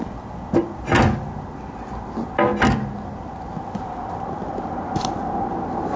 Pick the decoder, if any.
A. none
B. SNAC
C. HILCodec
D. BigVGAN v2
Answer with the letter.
A